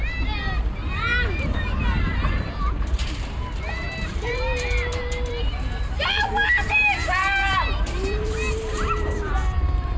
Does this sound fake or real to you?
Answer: fake